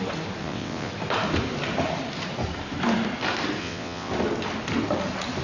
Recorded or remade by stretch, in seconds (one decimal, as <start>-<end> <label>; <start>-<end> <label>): 0.0-0.4 recorded; 0.4-0.9 remade; 0.9-3.6 recorded; 3.6-4.1 remade; 4.1-5.4 recorded